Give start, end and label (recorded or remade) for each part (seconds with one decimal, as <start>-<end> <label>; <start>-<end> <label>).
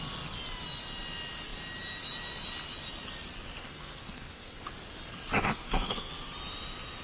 0.0-3.6 recorded; 3.6-4.6 remade; 4.6-5.4 recorded; 5.4-6.1 remade; 6.1-7.0 recorded